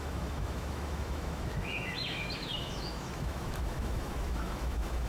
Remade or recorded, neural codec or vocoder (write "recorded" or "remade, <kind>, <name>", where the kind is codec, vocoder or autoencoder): remade, autoencoder, DAC-VAE